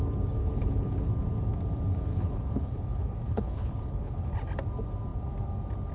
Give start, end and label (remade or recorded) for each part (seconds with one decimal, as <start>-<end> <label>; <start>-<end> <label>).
0.0-0.4 recorded; 0.4-1.1 remade; 1.1-2.1 recorded; 2.1-4.3 remade; 4.3-5.9 recorded